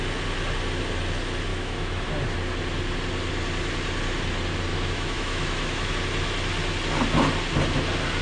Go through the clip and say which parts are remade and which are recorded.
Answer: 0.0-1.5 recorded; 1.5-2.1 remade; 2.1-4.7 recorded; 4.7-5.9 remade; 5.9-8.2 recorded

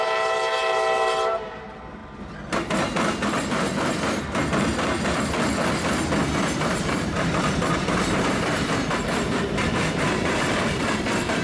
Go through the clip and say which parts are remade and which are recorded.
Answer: 0.0-2.0 remade; 2.0-6.2 recorded; 6.2-11.4 remade

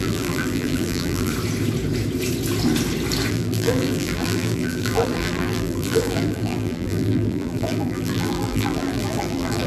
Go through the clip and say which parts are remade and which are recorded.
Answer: 0.0-1.3 remade; 1.3-3.3 recorded; 3.3-9.7 remade

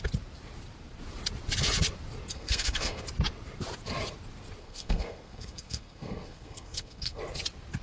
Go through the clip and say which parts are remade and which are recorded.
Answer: 0.0-2.3 recorded; 2.3-3.0 remade; 3.0-4.6 recorded; 4.6-7.2 remade; 7.2-7.8 recorded

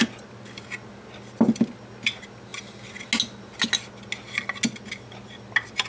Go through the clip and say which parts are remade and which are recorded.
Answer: 0.0-5.9 recorded

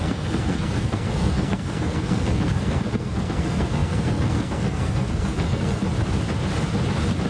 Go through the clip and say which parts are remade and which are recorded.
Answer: 0.0-5.8 remade; 5.8-7.3 recorded

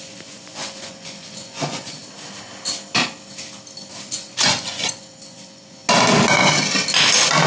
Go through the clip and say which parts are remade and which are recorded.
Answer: 0.0-2.0 remade; 2.0-4.1 recorded; 4.1-5.8 remade; 5.8-7.5 recorded